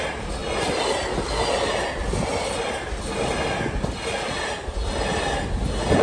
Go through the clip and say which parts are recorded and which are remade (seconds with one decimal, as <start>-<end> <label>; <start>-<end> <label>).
0.0-6.0 recorded